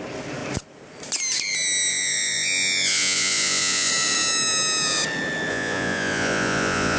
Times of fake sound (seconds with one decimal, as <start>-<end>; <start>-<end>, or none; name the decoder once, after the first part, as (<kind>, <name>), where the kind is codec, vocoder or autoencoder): 1.9-3.9 (vocoder, Vocos); 5.5-7.0